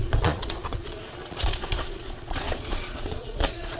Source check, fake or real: fake